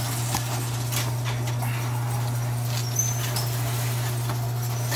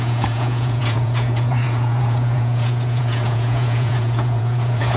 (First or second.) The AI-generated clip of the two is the second